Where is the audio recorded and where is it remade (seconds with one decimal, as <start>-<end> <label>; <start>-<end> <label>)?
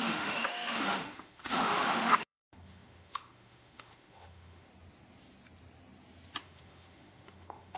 0.0-4.7 remade; 4.7-6.4 recorded; 6.4-7.8 remade